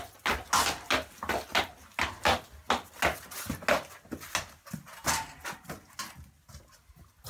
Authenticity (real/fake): real